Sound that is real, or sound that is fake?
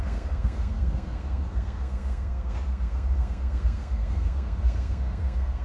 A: fake